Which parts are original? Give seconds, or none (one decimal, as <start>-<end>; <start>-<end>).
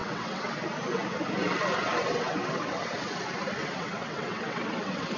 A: 0.6-1.8; 2.9-3.6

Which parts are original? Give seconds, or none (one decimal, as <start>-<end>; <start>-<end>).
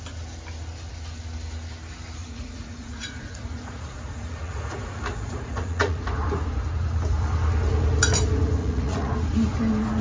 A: 0.0-2.2; 6.1-8.6; 9.1-10.0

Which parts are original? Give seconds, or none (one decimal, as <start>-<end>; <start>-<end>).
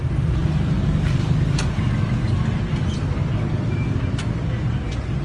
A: 0.0-5.2